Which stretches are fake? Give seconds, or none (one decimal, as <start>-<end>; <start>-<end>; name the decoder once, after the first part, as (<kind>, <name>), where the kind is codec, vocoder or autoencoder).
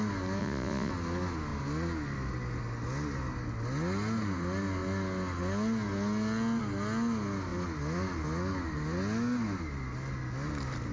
0.4-0.9 (vocoder, Vocos)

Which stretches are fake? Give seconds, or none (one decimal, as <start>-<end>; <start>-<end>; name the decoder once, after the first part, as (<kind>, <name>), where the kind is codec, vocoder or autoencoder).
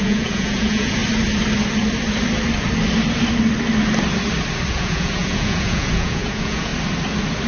0.0-1.0 (vocoder, Vocos); 4.7-6.7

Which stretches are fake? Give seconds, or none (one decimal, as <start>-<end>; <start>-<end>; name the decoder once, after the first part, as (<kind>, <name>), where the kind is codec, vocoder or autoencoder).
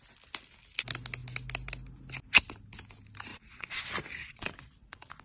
3.3-3.8 (vocoder, Vocos); 4.2-5.2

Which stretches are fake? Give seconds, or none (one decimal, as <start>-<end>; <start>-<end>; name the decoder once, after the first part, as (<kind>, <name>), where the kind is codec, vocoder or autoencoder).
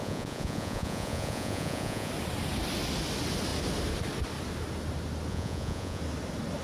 0.0-2.1 (vocoder, Vocos); 5.3-6.0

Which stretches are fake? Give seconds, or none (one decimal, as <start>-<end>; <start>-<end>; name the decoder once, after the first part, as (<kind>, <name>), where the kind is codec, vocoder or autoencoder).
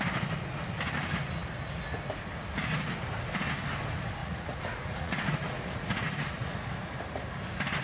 4.2-6.9 (vocoder, Vocos)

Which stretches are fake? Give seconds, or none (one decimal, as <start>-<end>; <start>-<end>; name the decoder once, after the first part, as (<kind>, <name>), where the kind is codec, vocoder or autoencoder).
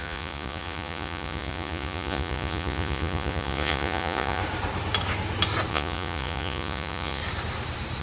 0.0-4.4 (vocoder, Vocos); 5.7-7.2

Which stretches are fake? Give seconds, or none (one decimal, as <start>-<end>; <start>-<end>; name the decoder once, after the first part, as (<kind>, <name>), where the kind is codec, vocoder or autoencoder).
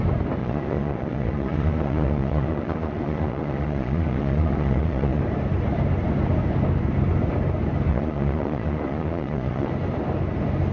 0.4-5.2 (vocoder, Vocos); 7.9-9.7